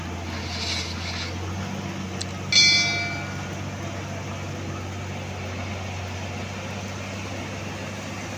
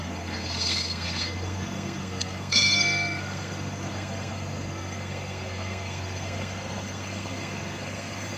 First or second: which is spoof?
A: second